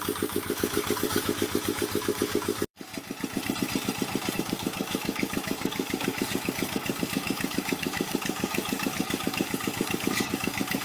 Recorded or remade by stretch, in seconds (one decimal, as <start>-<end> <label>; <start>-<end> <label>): 0.0-2.9 remade; 2.9-4.3 recorded; 4.3-10.8 remade